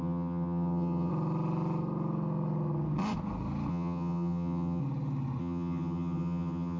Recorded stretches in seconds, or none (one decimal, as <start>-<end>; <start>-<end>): 1.1-3.7; 4.8-5.4

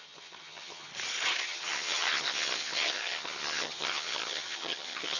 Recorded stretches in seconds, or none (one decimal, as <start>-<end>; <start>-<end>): 0.9-1.4

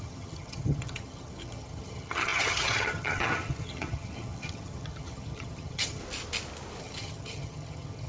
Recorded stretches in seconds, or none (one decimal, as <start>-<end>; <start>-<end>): 6.0-6.8